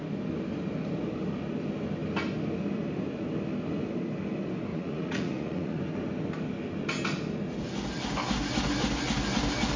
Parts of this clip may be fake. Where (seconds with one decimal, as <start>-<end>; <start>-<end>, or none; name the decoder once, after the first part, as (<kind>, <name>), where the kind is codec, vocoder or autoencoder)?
4.7-5.8 (vocoder, Vocos)